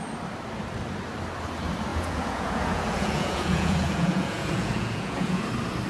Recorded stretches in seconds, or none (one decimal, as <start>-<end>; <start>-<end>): 0.0-1.9; 5.4-5.9